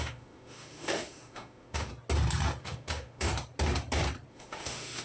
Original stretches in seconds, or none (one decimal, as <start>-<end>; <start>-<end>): 1.9-2.6; 3.3-4.3